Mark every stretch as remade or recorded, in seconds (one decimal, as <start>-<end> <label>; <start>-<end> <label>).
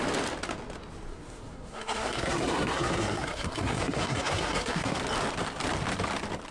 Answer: 0.0-1.1 recorded; 1.1-5.0 remade; 5.0-6.5 recorded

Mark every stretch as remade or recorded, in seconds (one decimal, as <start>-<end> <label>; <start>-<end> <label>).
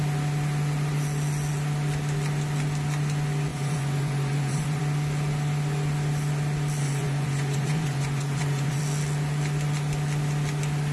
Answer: 0.0-3.5 recorded; 3.5-4.8 remade; 4.8-6.8 recorded; 6.8-8.8 remade; 8.8-10.9 recorded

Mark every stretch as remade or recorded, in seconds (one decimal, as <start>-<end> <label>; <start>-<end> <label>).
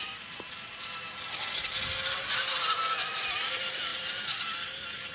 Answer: 0.0-5.1 recorded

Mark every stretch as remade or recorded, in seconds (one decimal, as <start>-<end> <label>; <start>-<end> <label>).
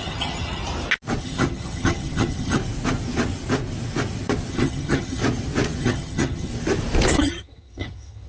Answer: 0.0-0.6 remade; 0.6-1.2 recorded; 1.2-2.6 remade; 2.6-4.5 recorded; 4.5-5.2 remade; 5.2-5.8 recorded; 5.8-6.5 remade; 6.5-7.1 recorded; 7.1-8.3 remade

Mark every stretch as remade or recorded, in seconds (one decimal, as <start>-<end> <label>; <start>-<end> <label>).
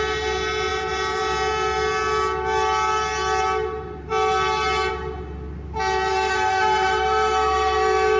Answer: 0.0-6.1 recorded; 6.1-8.2 remade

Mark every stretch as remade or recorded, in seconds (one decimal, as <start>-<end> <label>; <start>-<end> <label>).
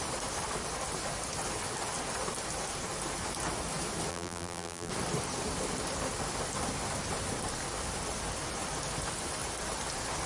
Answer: 0.0-4.1 recorded; 4.1-4.9 remade; 4.9-10.3 recorded